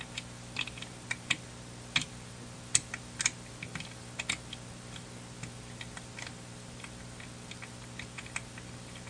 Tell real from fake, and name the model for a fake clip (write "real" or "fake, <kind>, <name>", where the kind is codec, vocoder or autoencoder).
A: real